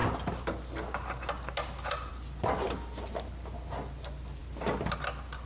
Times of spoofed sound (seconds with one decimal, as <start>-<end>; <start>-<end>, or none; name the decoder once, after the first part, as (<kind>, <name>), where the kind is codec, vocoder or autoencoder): none